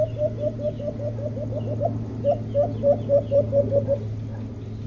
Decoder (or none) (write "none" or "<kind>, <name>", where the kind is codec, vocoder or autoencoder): none